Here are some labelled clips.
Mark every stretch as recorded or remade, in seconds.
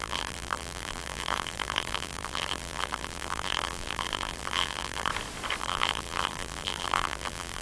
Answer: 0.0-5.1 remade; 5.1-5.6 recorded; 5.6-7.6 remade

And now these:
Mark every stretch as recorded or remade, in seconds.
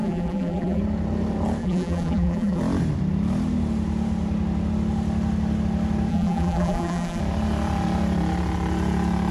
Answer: 0.0-0.8 remade; 0.8-1.6 recorded; 1.6-2.6 remade; 2.6-6.1 recorded; 6.1-7.2 remade; 7.2-9.3 recorded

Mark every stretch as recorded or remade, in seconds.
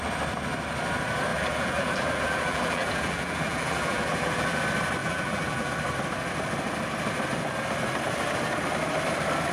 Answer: 0.0-1.3 recorded; 1.3-4.6 remade; 4.6-5.0 recorded; 5.0-5.7 remade; 5.7-9.5 recorded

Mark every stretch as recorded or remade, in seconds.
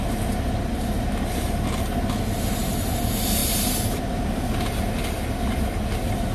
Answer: 0.0-3.4 recorded; 3.4-4.1 remade; 4.1-6.3 recorded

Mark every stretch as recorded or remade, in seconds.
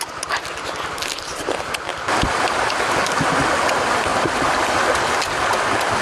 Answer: 0.0-1.9 recorded; 1.9-2.8 remade; 2.8-4.1 recorded; 4.1-4.7 remade; 4.7-6.0 recorded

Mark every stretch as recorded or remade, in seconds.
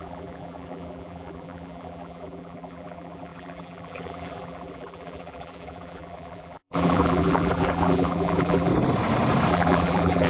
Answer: 0.0-8.7 remade; 8.7-9.5 recorded; 9.5-10.3 remade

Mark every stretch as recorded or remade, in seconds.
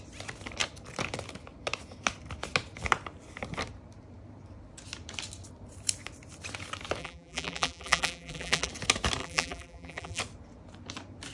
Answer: 0.0-7.0 recorded; 7.0-8.7 remade; 8.7-9.2 recorded; 9.2-10.2 remade; 10.2-11.3 recorded